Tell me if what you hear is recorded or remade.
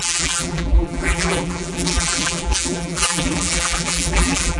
remade